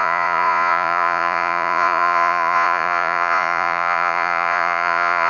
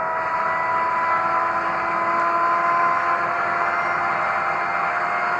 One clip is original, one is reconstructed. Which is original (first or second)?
second